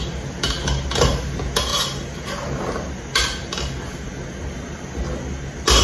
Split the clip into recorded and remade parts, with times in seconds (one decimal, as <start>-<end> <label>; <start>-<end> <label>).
0.0-5.8 recorded